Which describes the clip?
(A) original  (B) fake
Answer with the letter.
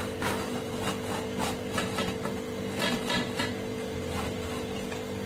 A